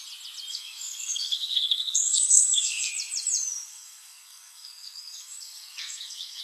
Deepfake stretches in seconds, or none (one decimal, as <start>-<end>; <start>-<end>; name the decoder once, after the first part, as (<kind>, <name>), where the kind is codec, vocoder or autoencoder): 0.5-2.9 (codec, SNAC); 3.7-6.4